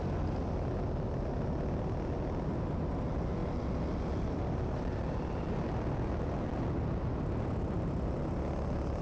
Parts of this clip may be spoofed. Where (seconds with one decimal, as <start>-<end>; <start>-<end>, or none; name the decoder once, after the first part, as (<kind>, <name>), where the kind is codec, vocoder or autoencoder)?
none